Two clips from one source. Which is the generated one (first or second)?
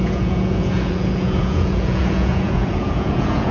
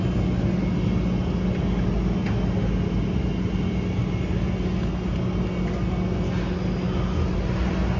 first